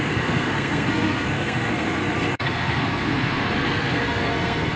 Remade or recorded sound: remade